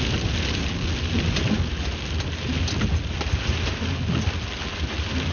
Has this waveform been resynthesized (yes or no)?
no